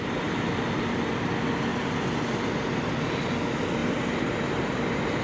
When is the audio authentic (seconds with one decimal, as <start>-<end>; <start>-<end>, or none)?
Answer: 0.0-1.7; 2.8-3.8